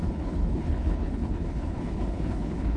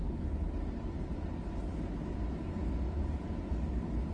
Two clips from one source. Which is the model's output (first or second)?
first